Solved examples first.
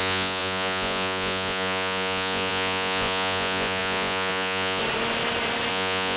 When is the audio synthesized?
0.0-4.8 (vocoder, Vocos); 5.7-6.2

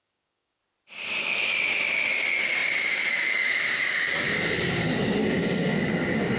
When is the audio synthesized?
0.0-0.6 (codec, DAC); 1.2-5.2; 5.8-6.4

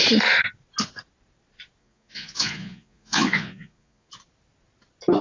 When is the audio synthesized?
1.8-4.1 (vocoder, Vocos)

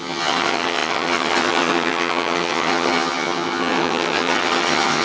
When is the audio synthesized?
0.0-5.0 (vocoder, HiFi-GAN)

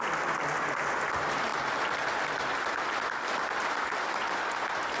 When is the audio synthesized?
none

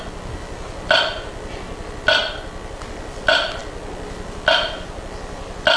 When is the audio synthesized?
none